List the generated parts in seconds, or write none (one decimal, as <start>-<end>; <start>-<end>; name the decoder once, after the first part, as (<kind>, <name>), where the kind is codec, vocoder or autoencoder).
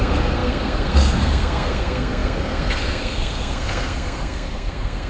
0.0-5.1 (codec, SNAC)